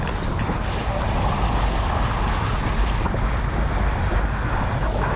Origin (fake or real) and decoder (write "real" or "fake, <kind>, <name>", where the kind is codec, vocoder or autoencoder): real